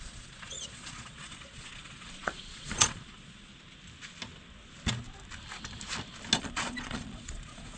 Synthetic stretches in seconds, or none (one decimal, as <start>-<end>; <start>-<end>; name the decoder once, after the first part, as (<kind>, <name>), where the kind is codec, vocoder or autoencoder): 0.0-3.5 (vocoder, Vocos); 6.4-7.8